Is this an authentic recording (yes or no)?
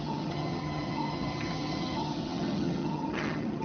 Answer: no